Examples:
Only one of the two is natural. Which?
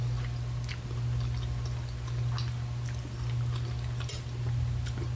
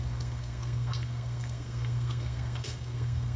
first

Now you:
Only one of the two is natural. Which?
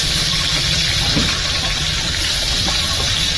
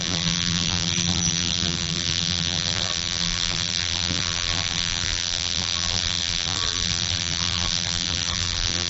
first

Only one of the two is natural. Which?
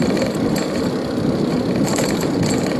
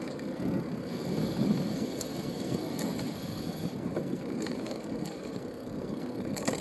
first